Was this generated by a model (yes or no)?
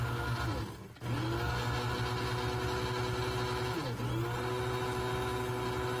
no